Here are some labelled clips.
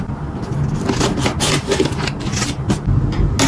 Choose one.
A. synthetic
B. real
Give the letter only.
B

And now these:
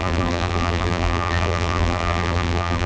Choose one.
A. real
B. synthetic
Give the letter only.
B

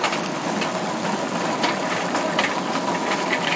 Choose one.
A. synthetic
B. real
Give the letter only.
A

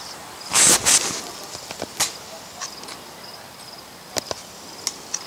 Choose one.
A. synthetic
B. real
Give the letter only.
B